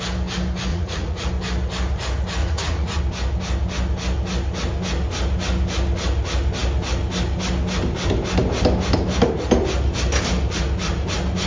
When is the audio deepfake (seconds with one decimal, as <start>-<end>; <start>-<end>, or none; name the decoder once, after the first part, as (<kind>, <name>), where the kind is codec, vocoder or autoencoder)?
0.7-1.3 (vocoder, Vocos); 2.4-3.0